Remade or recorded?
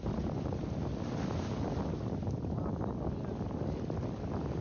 recorded